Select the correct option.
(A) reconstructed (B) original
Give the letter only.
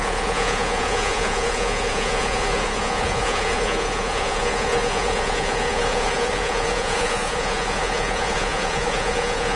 A